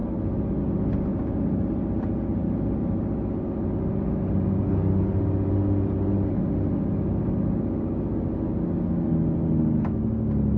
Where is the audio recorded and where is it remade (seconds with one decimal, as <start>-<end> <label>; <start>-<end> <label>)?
0.0-1.1 recorded; 1.1-1.6 remade; 1.6-2.3 recorded; 2.3-2.8 remade; 2.8-10.6 recorded

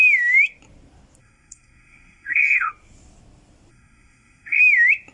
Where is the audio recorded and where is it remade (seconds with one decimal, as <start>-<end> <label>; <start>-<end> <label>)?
0.0-1.2 recorded; 1.2-2.7 remade; 2.7-3.7 recorded; 3.7-4.6 remade; 4.6-5.1 recorded

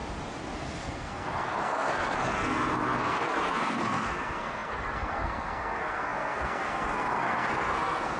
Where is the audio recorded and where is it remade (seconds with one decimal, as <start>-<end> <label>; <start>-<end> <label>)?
0.0-0.6 recorded; 0.6-8.2 remade

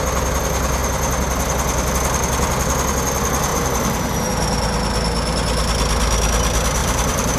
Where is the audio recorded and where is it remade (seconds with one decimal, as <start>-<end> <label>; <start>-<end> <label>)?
0.0-3.5 recorded; 3.5-4.3 remade; 4.3-6.8 recorded; 6.8-7.4 remade